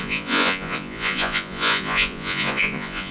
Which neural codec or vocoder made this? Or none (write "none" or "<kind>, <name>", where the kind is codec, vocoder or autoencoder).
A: vocoder, Vocos